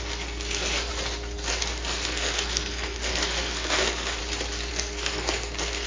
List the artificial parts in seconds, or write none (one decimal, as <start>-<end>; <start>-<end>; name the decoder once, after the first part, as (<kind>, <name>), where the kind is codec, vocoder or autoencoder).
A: 0.0-0.9 (codec, SNAC); 1.5-4.2; 4.7-5.9